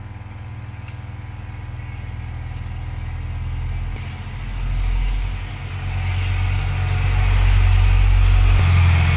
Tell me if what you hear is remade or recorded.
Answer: recorded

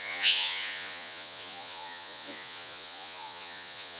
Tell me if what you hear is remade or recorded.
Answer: remade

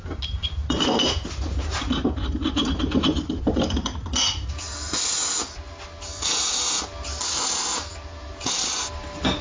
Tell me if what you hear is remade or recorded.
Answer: recorded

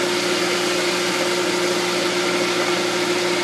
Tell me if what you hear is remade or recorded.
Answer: recorded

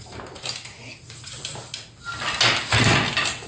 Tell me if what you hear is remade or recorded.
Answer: recorded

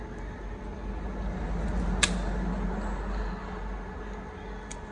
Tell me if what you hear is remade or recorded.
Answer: recorded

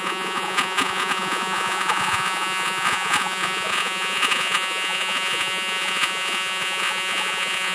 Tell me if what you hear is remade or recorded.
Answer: remade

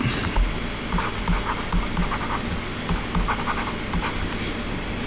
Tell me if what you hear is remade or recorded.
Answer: recorded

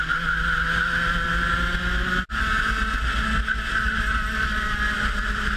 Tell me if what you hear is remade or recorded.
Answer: recorded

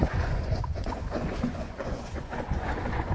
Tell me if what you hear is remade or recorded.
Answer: remade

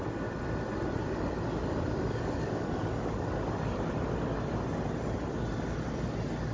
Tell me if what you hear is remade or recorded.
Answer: recorded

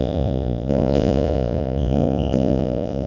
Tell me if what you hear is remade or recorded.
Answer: remade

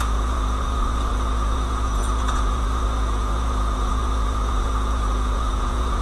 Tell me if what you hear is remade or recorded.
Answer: remade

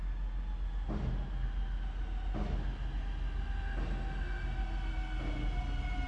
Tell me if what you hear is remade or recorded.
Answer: recorded